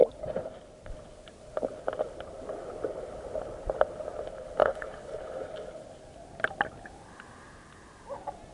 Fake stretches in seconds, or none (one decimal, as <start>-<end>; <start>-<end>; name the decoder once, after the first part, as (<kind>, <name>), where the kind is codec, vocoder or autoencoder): 4.6-5.3 (codec, HILCodec)